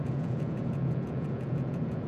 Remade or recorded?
remade